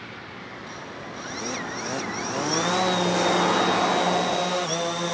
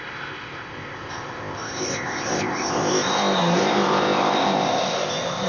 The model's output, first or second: second